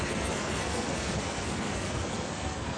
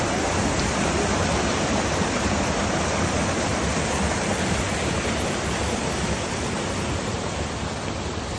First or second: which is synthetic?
first